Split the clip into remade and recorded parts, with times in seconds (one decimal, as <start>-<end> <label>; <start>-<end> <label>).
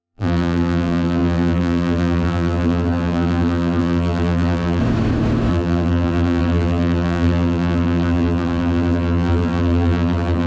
0.0-4.8 remade; 4.8-5.5 recorded; 5.5-10.5 remade